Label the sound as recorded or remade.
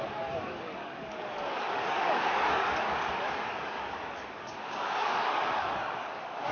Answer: remade